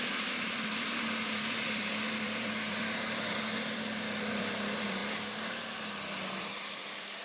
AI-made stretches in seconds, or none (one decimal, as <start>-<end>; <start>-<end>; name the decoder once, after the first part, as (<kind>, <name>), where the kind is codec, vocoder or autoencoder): 0.0-5.0 (vocoder, BigVGAN v2); 6.4-7.2